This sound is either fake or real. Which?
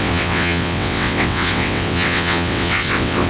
fake